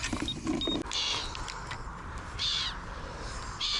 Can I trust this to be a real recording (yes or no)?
yes